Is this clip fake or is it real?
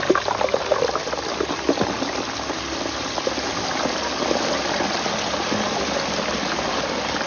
real